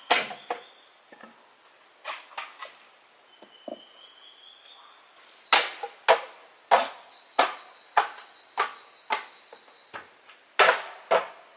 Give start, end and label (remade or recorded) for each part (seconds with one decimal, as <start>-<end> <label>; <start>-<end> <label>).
0.0-11.6 recorded